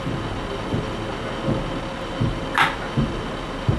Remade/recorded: recorded